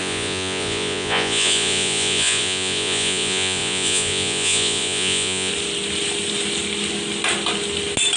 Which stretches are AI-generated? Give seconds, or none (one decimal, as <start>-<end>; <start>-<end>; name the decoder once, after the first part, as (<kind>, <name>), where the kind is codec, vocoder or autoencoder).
0.0-5.5 (vocoder, Vocos)